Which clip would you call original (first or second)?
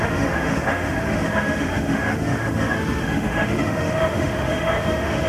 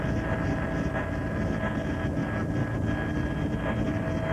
second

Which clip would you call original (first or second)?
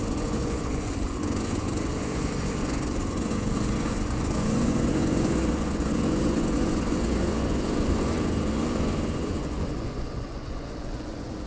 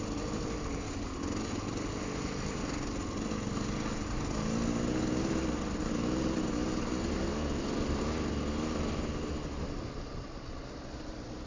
second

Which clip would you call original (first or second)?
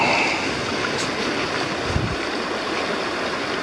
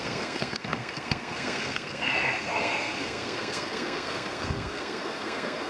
first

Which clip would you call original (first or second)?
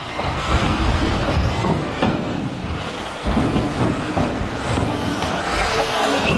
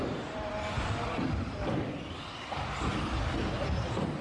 second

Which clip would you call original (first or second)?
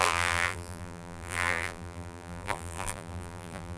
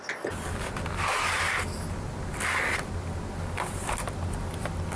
second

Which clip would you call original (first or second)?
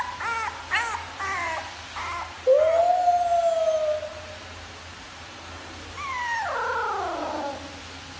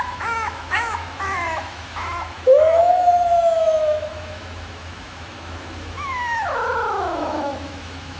first